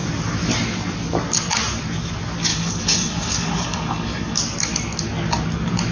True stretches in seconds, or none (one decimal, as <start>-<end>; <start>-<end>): 0.0-2.5; 4.4-5.9